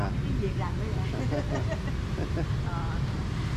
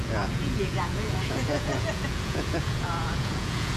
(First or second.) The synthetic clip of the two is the second